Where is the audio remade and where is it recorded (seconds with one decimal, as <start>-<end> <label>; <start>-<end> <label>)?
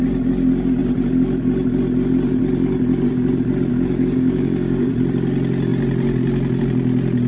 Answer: 0.0-3.7 recorded; 3.7-4.9 remade; 4.9-7.3 recorded